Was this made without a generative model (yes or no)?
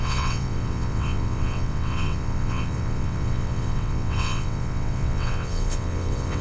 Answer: no